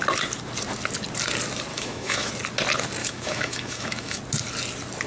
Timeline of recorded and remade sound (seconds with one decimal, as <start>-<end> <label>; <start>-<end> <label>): 0.0-1.7 recorded; 1.7-2.3 remade; 2.3-3.0 recorded; 3.0-4.2 remade; 4.2-5.1 recorded